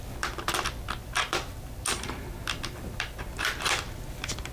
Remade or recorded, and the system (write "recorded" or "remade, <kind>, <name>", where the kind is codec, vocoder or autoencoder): recorded